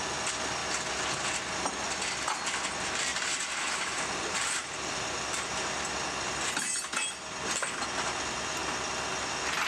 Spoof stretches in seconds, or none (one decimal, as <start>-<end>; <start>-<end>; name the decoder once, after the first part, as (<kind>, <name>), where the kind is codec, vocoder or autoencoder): 3.1-5.8 (vocoder, BigVGAN v2)